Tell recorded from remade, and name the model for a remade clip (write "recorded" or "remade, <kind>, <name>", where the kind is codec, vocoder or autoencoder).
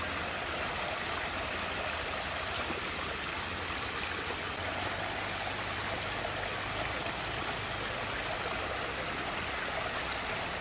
recorded